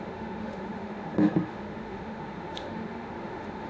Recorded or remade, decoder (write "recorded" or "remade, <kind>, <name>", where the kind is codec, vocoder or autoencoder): remade, autoencoder, DAC-VAE